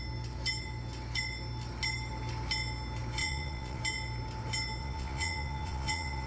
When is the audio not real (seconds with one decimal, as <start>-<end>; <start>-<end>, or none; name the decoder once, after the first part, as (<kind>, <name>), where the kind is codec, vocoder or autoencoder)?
3.2-3.8 (vocoder, Vocos); 4.8-6.3